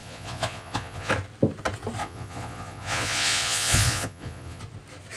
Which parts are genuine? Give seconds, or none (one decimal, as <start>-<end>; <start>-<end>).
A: 1.1-2.0; 4.6-5.2